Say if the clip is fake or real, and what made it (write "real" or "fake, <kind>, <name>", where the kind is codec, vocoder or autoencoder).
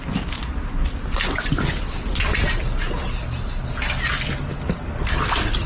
real